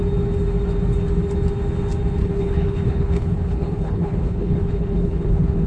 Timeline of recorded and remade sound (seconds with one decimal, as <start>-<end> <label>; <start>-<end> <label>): 0.0-2.2 recorded; 2.2-5.7 remade